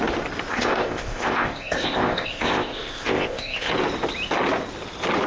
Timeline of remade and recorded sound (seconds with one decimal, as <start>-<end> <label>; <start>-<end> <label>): 0.0-0.5 recorded; 0.5-3.7 remade; 3.7-5.3 recorded